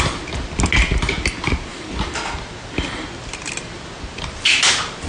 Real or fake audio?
real